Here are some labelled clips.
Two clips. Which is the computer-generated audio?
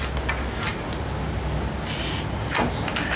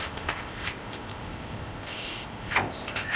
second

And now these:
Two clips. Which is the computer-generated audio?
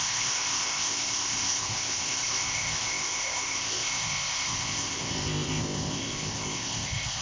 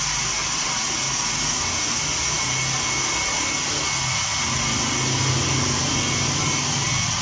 first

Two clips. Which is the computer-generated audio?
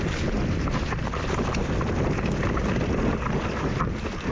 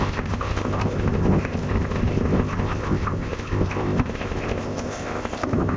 second